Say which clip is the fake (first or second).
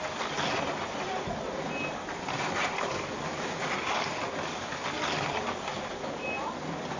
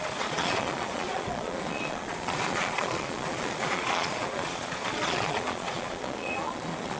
second